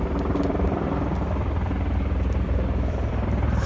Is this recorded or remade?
remade